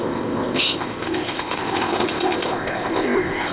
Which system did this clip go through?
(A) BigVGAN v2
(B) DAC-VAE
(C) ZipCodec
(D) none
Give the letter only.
C